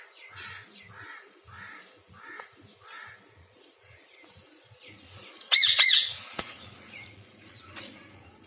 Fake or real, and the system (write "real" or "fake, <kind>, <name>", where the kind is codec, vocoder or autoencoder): fake, vocoder, Vocos